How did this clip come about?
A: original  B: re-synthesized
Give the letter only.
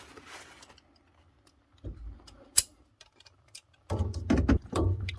A